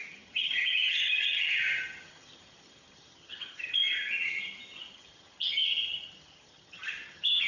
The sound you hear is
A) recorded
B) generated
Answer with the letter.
B